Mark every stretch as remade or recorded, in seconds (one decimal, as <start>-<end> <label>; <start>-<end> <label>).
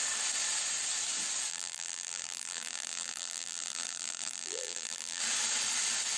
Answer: 0.0-1.5 recorded; 1.5-5.2 remade; 5.2-6.2 recorded